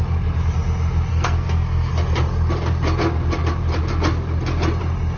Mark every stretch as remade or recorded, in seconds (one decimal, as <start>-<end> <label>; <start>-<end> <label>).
0.0-1.1 recorded; 1.1-1.9 remade; 1.9-5.2 recorded